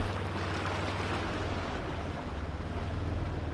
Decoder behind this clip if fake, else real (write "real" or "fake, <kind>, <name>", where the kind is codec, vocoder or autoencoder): real